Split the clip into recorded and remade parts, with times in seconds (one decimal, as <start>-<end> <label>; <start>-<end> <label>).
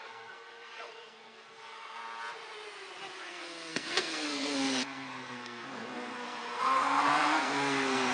0.0-2.0 remade; 2.0-3.3 recorded; 3.3-8.1 remade